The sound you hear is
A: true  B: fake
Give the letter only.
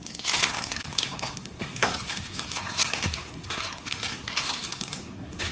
B